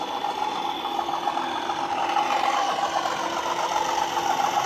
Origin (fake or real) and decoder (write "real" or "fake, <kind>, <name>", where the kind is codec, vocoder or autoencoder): real